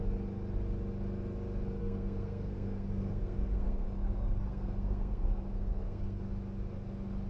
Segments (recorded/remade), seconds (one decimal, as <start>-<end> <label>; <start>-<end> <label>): 0.0-1.8 recorded; 1.8-6.2 remade; 6.2-7.3 recorded